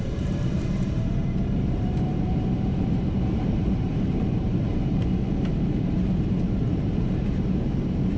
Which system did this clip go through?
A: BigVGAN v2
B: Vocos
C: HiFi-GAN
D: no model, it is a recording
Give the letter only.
A